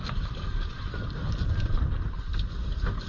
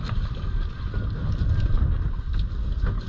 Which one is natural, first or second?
second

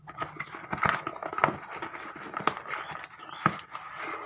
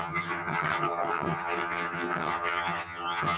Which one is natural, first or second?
first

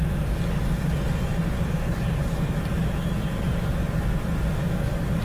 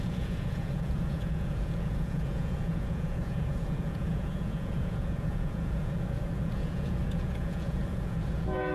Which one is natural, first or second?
first